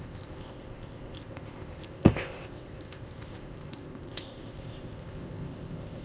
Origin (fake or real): fake